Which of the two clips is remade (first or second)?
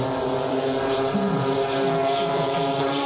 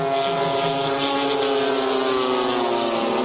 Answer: first